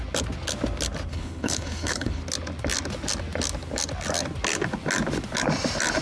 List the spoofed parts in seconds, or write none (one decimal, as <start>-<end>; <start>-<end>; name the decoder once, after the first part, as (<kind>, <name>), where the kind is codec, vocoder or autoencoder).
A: 1.1-2.2 (codec, HILCodec)